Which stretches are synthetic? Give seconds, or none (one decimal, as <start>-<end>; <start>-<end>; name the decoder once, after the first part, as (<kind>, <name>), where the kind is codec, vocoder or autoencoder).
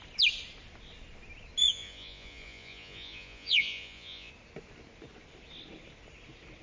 1.6-4.3 (vocoder, Vocos)